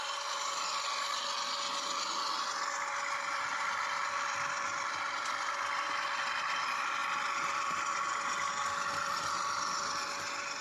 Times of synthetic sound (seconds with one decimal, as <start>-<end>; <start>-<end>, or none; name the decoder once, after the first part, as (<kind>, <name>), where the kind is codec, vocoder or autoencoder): none